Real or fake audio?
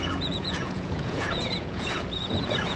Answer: fake